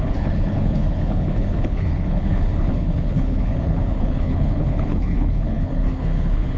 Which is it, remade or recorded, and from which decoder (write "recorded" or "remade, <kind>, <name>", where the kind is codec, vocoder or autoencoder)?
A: remade, codec, HILCodec